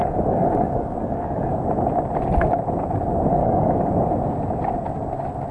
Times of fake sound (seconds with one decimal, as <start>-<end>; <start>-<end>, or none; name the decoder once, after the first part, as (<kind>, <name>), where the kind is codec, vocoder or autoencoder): 0.0-1.6 (codec, DAC); 3.4-3.9